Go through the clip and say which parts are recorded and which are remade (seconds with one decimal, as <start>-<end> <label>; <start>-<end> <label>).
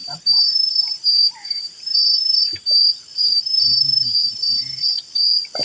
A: 0.0-3.4 remade; 3.4-5.6 recorded